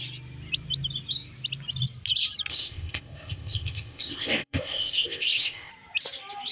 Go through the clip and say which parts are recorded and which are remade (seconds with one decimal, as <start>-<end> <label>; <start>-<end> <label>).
0.0-2.5 recorded; 2.5-5.7 remade; 5.7-6.5 recorded